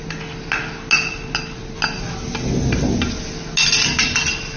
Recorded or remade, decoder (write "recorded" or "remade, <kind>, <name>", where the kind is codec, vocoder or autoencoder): recorded